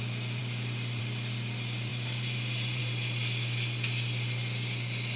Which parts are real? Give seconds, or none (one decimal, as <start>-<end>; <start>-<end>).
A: 0.0-1.9; 2.8-5.2